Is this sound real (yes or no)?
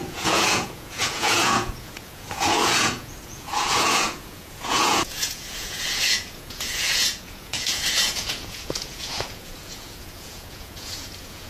no